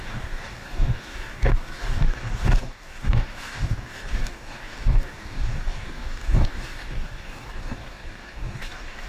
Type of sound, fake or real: fake